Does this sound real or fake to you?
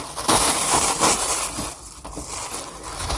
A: real